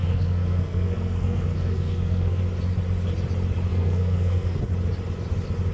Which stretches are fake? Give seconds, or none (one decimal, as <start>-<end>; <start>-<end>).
0.0-2.4; 3.7-4.6